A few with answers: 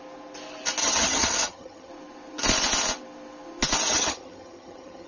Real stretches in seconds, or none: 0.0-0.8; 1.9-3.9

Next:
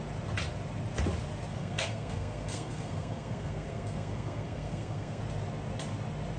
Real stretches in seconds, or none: 0.0-1.5; 5.2-6.4

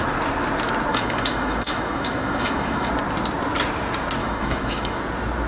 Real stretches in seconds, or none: 0.0-0.9; 2.9-4.2; 5.0-5.5

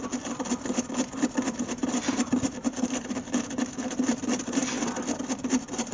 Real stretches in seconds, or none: 0.0-4.6; 5.2-5.9

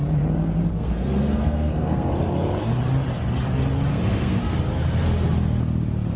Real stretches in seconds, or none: 0.0-0.7; 2.1-3.9; 4.4-6.2

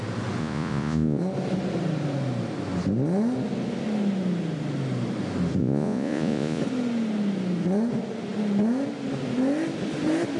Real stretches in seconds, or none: 0.0-0.4; 1.2-5.6; 6.6-10.4

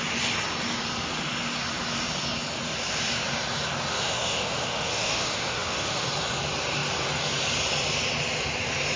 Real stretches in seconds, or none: 0.0-3.9; 6.1-9.0